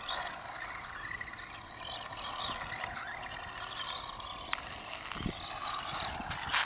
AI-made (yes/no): no